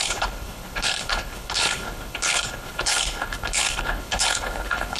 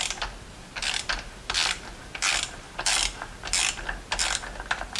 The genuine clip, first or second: second